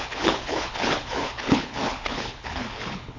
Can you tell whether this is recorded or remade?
remade